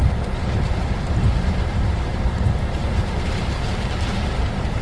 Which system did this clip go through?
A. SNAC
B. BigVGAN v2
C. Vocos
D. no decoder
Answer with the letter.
B